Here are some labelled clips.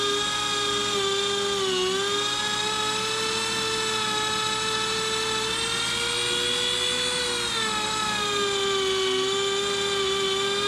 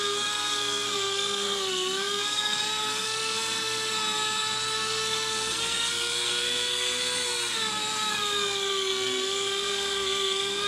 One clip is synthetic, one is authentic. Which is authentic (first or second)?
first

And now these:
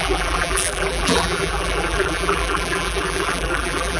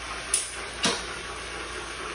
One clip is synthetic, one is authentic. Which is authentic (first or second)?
second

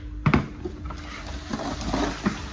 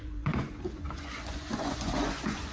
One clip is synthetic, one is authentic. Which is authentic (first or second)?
first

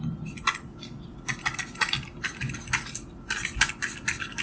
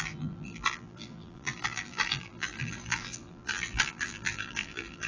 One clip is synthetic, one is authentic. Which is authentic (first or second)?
first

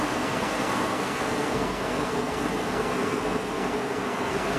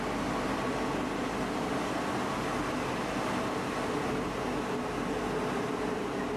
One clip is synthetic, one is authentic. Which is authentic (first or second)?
second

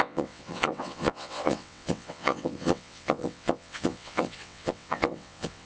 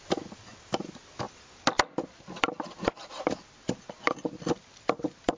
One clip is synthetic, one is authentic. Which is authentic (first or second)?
second